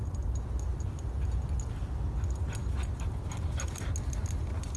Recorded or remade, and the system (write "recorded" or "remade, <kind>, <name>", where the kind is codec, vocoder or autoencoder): recorded